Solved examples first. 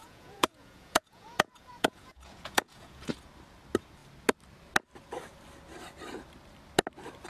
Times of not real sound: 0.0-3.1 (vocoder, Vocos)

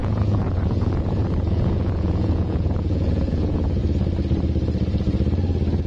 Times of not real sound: 0.0-3.8 (vocoder, Vocos)

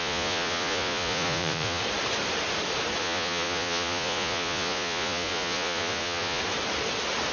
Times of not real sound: 0.0-1.8 (vocoder, Vocos); 3.0-6.4